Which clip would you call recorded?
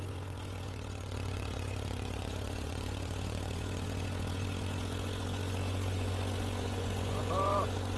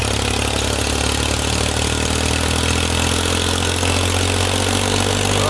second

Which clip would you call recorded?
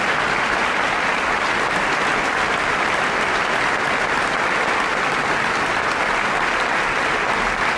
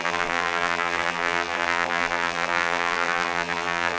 first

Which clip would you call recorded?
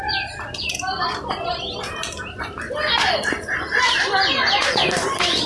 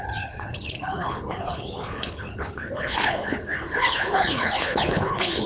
first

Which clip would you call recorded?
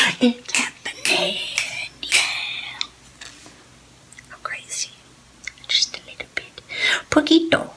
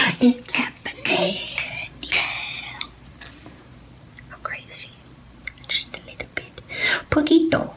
first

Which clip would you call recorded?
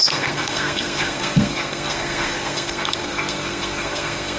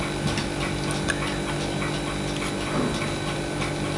second